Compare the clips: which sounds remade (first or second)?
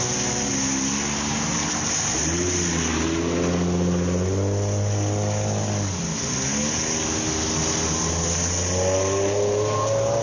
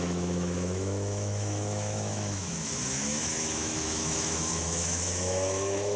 second